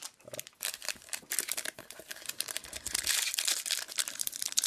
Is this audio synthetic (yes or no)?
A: yes